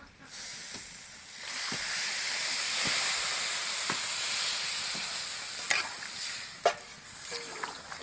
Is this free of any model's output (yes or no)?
yes